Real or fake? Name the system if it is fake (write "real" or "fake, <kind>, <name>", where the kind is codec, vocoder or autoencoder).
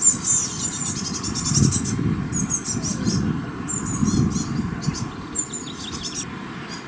real